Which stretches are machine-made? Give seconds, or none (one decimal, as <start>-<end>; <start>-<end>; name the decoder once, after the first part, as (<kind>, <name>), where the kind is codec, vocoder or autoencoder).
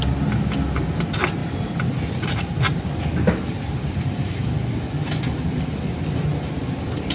none